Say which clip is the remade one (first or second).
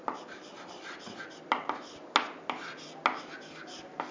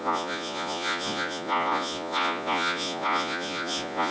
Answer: second